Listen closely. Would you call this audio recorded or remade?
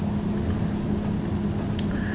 recorded